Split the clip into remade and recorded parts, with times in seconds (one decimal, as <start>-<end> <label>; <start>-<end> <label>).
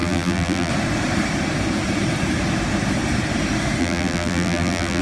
0.0-0.7 remade; 0.7-3.8 recorded; 3.8-5.0 remade